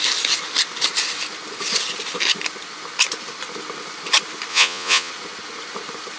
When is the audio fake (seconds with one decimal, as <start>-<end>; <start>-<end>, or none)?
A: 4.5-5.1